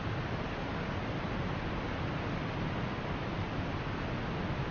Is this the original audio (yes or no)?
yes